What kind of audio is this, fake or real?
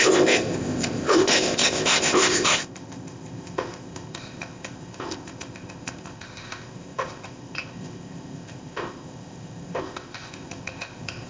fake